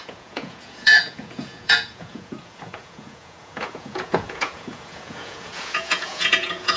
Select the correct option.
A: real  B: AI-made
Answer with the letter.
B